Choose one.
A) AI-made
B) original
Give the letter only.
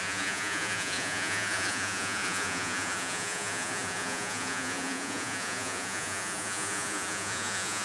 A